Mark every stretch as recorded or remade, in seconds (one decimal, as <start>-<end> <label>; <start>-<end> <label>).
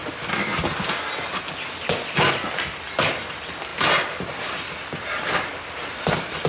0.0-6.5 recorded